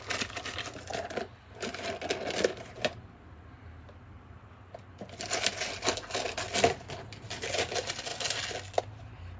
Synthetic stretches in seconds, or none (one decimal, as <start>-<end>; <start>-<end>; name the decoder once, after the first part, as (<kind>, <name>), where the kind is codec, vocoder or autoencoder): none